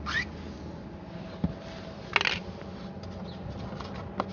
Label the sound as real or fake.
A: real